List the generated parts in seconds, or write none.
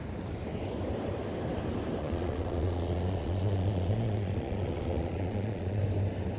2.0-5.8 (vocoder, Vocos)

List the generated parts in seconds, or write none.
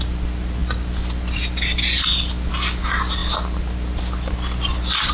none